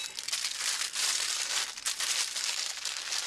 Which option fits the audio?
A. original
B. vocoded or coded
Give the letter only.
A